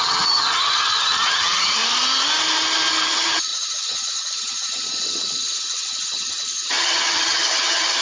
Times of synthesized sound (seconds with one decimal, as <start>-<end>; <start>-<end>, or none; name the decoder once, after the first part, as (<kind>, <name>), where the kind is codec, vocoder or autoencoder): 0.0-1.8 (vocoder, HiFi-GAN); 2.9-8.0